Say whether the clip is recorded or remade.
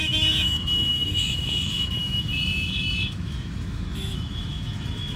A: remade